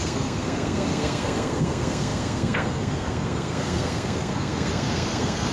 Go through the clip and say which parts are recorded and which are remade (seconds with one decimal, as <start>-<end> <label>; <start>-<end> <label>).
0.0-5.5 remade